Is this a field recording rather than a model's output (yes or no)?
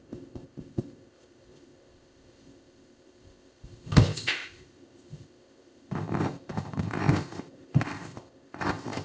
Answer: no